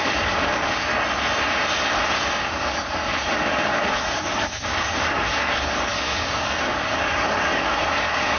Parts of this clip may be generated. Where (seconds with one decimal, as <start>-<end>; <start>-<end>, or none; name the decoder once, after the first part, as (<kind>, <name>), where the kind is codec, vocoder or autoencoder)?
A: 0.0-0.9 (codec, DAC); 2.4-8.4